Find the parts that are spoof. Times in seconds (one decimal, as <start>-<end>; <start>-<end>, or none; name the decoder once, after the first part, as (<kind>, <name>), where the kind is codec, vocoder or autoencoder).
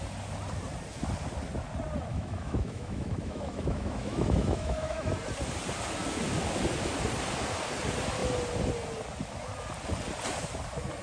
2.1-5.1 (autoencoder, DAC-VAE)